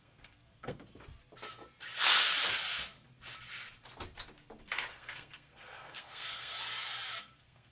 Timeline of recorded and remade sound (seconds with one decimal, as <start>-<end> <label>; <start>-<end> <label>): 0.0-0.8 remade; 0.8-4.9 recorded; 4.9-6.5 remade; 6.5-7.2 recorded; 7.2-7.7 remade